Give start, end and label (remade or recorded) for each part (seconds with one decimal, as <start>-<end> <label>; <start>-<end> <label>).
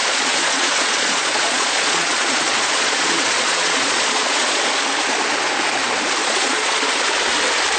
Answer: 0.0-4.6 remade; 4.6-6.2 recorded; 6.2-6.8 remade; 6.8-7.8 recorded